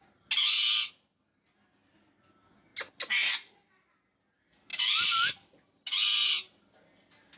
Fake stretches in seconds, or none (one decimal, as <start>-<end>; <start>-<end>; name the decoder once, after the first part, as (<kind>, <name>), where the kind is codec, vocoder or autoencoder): none